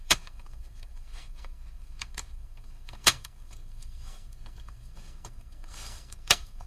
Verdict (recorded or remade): remade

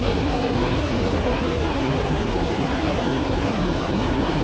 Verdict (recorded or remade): remade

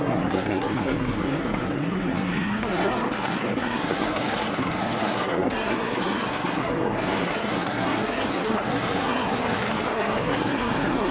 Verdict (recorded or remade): remade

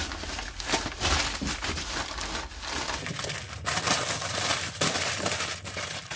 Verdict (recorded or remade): recorded